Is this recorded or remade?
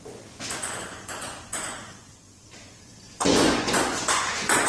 remade